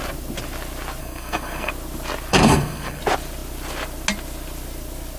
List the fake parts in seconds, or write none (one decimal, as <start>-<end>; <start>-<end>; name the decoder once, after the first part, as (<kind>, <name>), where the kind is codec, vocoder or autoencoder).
1.0-1.7 (codec, SNAC); 2.3-3.0